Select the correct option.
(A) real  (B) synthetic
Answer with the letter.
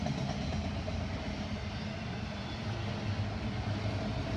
A